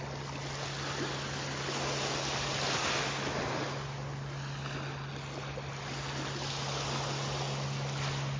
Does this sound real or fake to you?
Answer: real